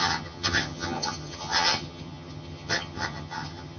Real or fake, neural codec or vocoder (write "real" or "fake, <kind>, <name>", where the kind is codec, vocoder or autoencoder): fake, vocoder, HiFi-GAN